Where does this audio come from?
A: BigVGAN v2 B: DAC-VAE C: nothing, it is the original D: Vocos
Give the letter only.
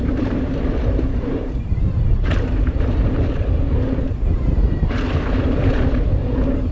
A